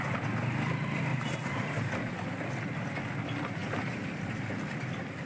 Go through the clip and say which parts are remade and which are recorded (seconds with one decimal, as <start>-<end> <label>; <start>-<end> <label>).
0.0-1.1 recorded; 1.1-1.9 remade; 1.9-3.6 recorded; 3.6-4.5 remade; 4.5-5.3 recorded